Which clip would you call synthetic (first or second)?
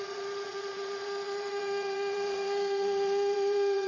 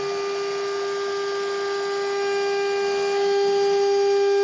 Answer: first